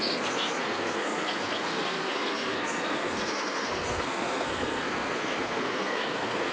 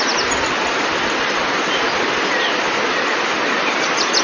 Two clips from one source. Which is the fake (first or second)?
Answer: first